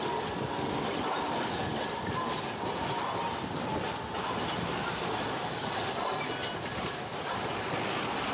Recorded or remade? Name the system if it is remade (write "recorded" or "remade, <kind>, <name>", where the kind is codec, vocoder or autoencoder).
recorded